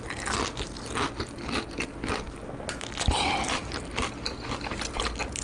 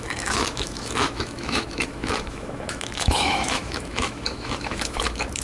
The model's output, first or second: second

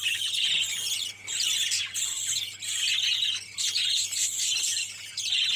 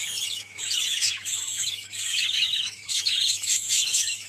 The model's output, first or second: second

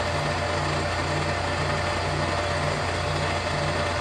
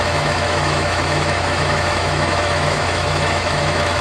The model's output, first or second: second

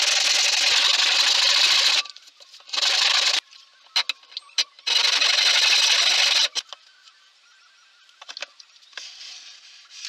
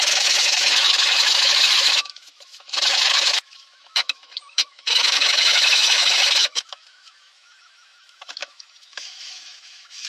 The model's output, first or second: second